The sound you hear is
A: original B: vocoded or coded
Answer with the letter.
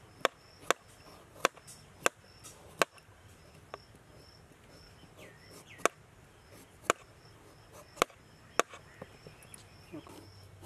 A